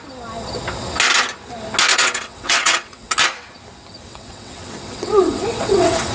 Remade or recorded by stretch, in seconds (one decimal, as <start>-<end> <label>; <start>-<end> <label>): 0.0-1.9 recorded; 1.9-3.1 remade; 3.1-4.1 recorded; 4.1-6.1 remade